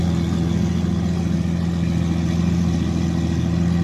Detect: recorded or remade recorded